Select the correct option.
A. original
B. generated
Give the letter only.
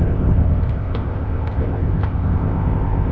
B